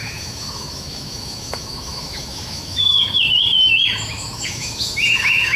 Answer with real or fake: fake